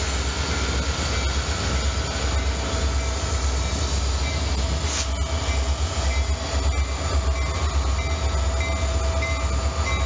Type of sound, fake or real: real